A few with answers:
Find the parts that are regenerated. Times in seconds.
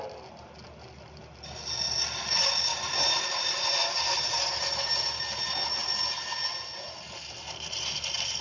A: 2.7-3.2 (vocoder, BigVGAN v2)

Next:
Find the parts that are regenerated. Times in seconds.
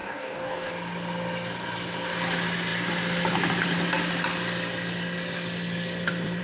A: 0.0-0.7 (codec, DAC)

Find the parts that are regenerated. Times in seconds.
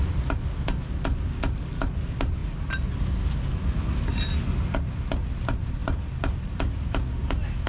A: none